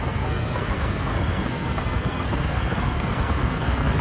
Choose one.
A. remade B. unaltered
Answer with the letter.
A